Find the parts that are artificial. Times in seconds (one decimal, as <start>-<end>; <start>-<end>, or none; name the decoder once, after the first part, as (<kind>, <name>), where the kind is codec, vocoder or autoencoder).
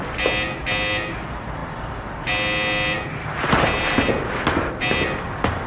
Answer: none